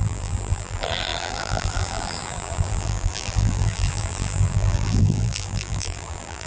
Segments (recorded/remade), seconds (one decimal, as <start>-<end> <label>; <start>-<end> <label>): 0.0-6.5 remade